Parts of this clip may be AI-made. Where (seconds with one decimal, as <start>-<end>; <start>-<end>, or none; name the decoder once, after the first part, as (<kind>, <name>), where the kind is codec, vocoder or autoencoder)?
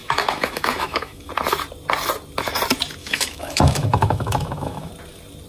0.0-1.3 (autoencoder, DAC-VAE); 3.0-4.9